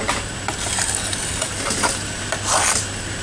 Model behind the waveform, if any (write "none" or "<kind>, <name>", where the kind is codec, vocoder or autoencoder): none